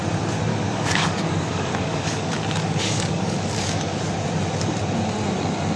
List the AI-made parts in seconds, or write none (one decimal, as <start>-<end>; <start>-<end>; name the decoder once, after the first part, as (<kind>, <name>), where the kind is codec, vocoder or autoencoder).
0.5-4.0 (codec, DAC)